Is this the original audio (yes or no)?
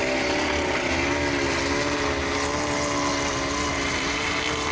yes